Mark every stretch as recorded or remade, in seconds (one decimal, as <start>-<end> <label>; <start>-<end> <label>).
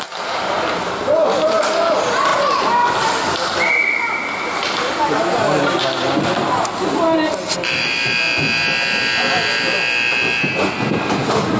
0.0-11.6 recorded